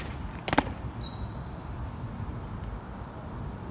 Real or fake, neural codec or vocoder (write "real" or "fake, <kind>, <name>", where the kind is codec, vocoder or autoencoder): real